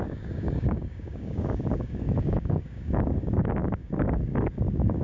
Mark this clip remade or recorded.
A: remade